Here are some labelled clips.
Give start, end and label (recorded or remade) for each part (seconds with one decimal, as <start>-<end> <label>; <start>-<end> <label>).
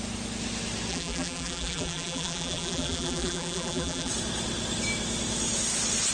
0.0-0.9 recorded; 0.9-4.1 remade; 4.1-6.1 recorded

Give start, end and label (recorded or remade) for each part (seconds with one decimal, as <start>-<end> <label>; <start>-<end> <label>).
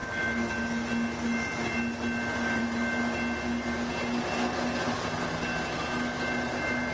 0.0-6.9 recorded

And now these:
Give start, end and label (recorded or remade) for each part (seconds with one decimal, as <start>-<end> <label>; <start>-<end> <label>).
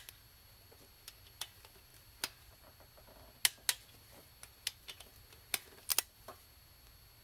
0.0-7.2 recorded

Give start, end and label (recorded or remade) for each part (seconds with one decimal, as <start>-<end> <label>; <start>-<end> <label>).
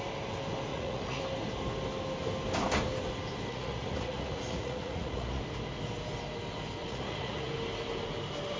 0.0-0.7 recorded; 0.7-1.2 remade; 1.2-3.5 recorded; 3.5-5.4 remade; 5.4-6.8 recorded; 6.8-7.5 remade; 7.5-8.6 recorded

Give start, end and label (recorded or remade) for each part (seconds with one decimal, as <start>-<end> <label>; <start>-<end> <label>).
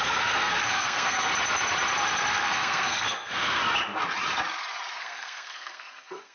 0.0-1.3 remade; 1.3-2.3 recorded; 2.3-3.6 remade; 3.6-5.0 recorded; 5.0-6.3 remade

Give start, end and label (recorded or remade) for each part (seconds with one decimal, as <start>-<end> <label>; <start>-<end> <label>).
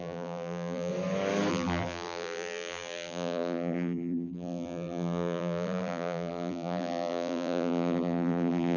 0.0-0.9 remade; 0.9-1.5 recorded; 1.5-8.8 remade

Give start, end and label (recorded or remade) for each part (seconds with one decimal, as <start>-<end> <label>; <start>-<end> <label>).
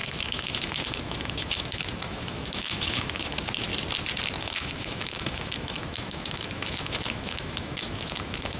0.0-3.7 remade; 3.7-4.4 recorded; 4.4-8.6 remade